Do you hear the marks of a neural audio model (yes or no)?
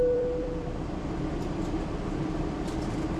yes